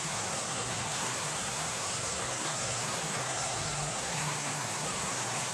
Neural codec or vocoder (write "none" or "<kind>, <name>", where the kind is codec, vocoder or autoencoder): codec, SNAC